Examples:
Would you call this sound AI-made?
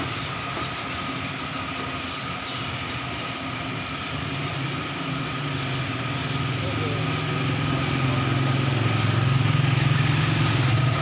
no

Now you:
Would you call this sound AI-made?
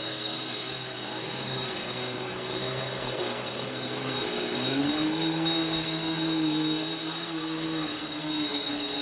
yes